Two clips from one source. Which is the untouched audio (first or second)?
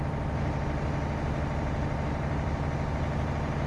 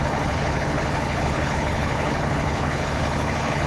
first